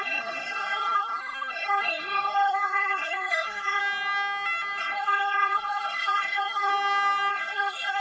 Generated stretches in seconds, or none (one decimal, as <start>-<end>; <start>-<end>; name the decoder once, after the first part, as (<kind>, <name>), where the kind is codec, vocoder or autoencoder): 0.0-3.8 (codec, SNAC); 4.8-6.7; 7.3-8.0